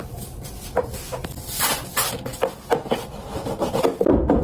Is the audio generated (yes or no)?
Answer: no